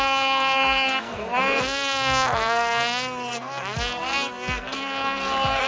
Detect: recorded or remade remade